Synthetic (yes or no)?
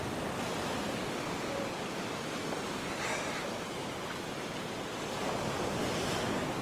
no